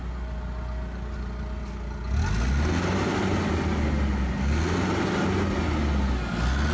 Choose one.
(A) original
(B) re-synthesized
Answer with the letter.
A